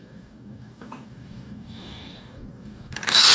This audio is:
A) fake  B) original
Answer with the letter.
A